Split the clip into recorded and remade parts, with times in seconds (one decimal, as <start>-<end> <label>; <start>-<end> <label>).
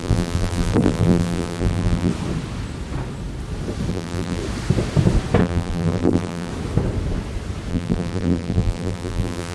0.0-2.1 remade; 2.1-3.9 recorded; 3.9-4.4 remade; 4.4-5.4 recorded; 5.4-6.5 remade; 6.5-7.7 recorded; 7.7-9.5 remade